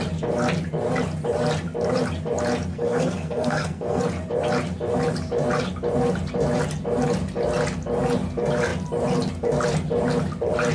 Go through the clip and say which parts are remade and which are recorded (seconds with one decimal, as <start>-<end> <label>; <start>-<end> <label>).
0.0-2.7 recorded; 2.7-4.0 remade; 4.0-10.7 recorded